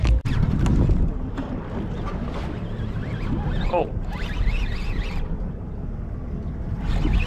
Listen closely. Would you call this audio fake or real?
real